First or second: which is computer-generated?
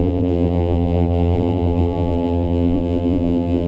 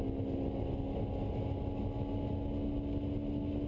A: first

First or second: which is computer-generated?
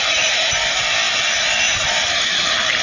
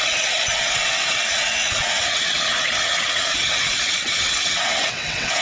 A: second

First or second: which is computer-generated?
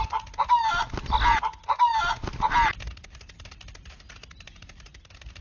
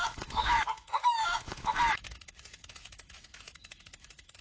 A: second